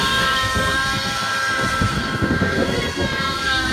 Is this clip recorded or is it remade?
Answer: remade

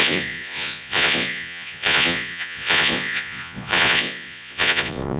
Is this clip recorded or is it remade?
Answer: remade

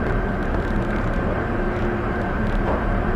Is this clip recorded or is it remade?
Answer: remade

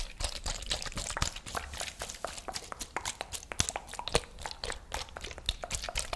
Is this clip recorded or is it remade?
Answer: recorded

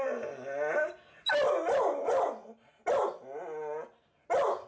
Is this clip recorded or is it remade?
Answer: recorded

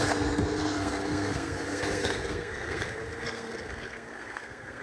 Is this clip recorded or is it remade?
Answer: remade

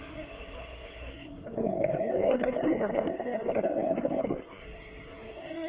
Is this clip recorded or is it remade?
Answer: remade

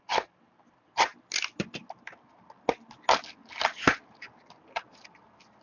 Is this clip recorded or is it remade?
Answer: recorded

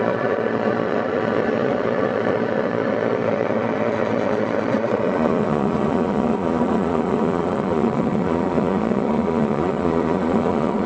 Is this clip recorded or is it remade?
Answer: remade